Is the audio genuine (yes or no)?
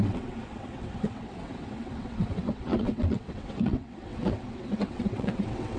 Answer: no